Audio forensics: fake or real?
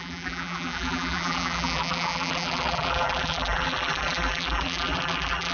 fake